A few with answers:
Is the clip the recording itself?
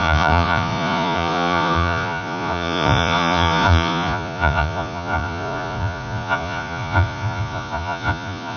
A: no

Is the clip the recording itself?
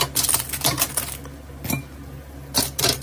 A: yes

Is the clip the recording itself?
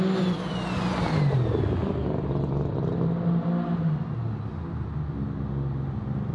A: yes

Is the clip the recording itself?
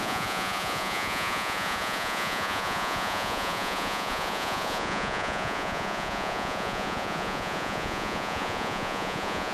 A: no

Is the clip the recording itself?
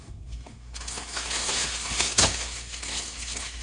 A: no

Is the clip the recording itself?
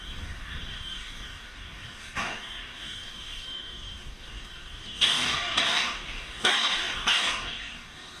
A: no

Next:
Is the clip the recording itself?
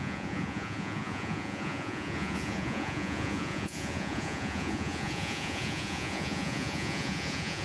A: no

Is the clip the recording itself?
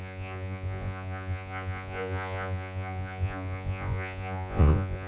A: no